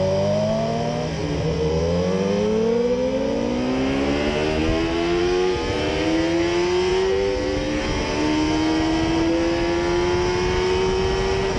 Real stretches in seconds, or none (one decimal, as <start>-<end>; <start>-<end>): 0.0-11.6